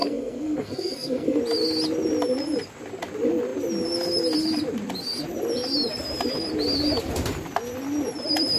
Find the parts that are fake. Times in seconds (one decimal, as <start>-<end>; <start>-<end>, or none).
0.0-1.4